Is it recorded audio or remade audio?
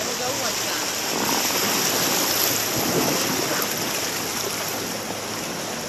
recorded